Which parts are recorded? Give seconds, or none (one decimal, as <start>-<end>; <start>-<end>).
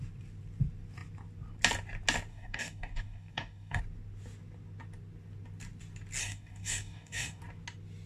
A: 0.0-2.3; 3.8-6.2; 7.4-8.1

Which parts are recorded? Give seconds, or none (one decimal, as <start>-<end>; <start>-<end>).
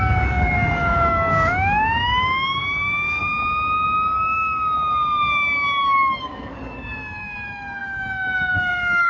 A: 3.2-6.2